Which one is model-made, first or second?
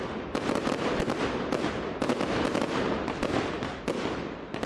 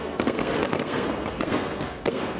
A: second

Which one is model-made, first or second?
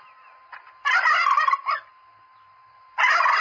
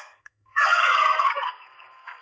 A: second